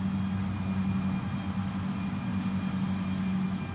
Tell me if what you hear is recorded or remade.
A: recorded